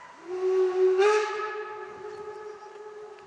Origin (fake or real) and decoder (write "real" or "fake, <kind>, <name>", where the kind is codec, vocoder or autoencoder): real